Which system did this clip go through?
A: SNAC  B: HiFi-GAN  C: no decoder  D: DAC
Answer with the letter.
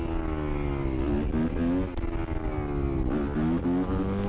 C